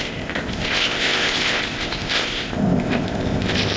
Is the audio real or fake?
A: fake